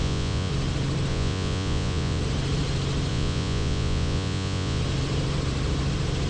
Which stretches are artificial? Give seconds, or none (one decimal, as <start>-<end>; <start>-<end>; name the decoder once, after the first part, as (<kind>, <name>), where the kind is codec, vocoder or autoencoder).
0.0-0.5 (vocoder, Vocos); 1.1-2.2; 3.1-4.8